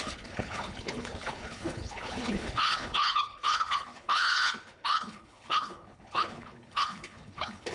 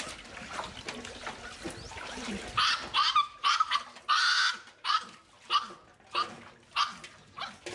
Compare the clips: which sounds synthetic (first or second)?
first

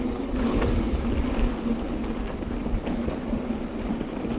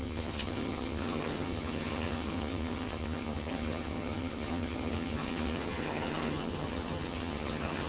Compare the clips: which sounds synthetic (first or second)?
second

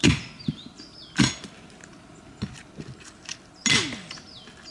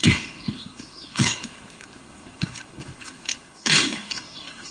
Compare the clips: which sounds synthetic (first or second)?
second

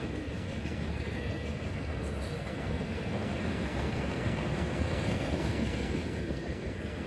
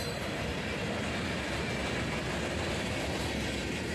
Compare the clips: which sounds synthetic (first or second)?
first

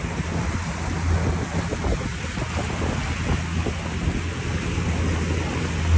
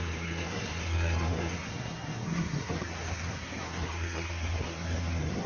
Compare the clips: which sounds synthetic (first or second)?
second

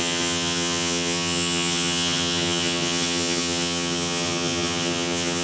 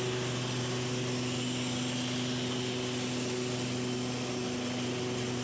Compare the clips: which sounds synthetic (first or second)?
first